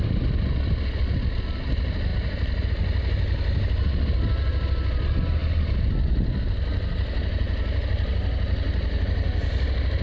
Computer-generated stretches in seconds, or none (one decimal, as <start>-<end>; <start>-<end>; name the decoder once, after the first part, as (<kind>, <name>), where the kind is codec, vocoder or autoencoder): none